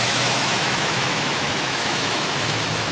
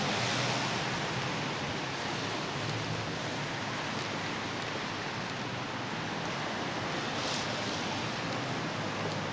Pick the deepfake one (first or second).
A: first